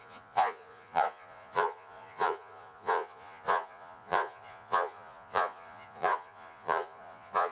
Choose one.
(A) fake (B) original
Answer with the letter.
A